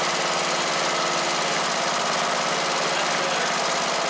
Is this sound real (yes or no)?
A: yes